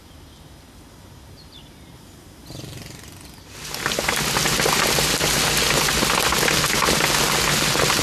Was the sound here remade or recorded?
recorded